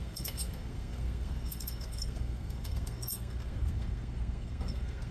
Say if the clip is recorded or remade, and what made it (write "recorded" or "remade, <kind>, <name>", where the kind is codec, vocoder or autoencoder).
remade, codec, SNAC